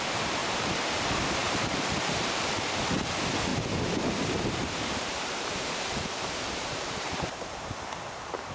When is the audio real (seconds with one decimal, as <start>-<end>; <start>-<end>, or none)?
0.0-0.4; 0.9-1.4; 2.8-3.5; 7.8-8.5